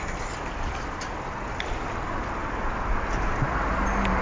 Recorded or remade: recorded